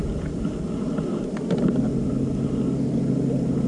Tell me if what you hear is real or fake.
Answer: real